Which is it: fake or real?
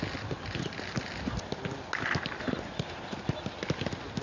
real